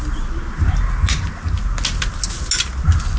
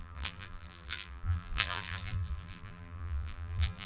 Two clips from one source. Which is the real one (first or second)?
first